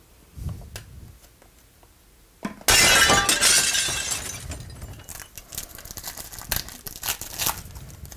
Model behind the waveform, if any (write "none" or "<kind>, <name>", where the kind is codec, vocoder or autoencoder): none